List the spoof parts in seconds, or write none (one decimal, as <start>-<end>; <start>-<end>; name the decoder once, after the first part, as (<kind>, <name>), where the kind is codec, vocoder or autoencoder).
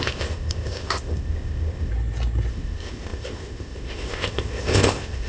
0.0-1.9 (codec, ZipCodec); 2.5-5.3